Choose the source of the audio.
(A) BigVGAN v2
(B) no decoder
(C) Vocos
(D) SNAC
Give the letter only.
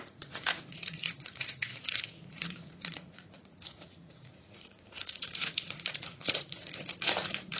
C